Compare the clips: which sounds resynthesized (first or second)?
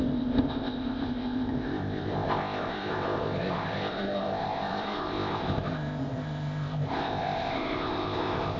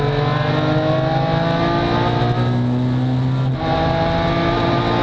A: first